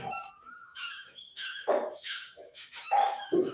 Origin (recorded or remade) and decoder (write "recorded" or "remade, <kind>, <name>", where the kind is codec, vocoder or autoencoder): remade, autoencoder, DAC-VAE